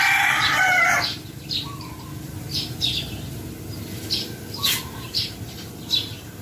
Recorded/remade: recorded